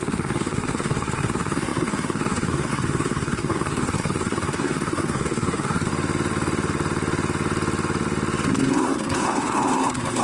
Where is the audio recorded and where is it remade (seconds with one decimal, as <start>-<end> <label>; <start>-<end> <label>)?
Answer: 0.0-5.9 remade; 5.9-8.6 recorded; 8.6-10.2 remade